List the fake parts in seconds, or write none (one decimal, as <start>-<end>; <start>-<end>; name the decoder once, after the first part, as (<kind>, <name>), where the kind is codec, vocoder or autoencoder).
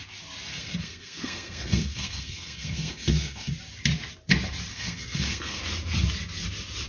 0.5-3.5 (codec, SNAC); 4.7-5.6